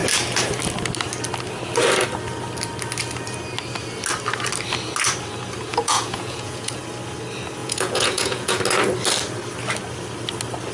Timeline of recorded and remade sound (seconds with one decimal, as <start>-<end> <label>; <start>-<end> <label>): 0.0-5.7 recorded; 5.7-6.8 remade; 6.8-7.6 recorded; 7.6-8.6 remade; 8.6-10.7 recorded